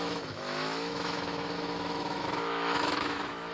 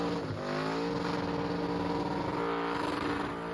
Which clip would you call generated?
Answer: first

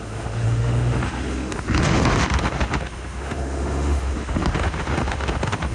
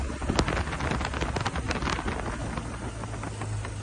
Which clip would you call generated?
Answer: first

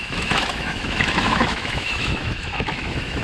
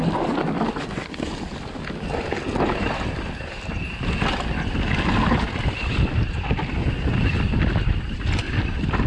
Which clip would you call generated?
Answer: first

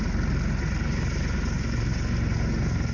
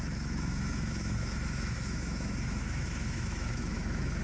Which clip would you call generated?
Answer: second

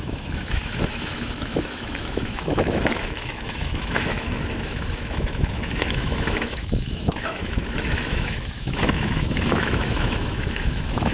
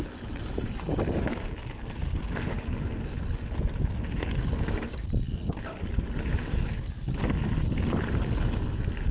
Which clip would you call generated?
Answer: first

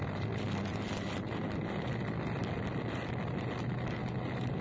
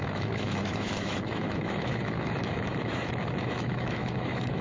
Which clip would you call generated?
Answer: second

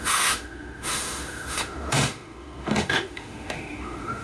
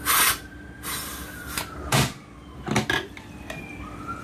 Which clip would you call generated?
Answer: first